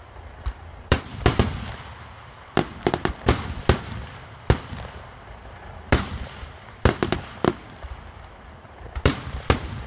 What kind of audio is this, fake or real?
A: fake